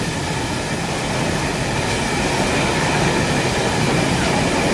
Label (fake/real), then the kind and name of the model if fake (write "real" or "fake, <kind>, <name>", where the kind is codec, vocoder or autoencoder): real